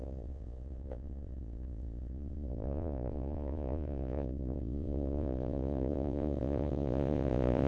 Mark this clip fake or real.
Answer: fake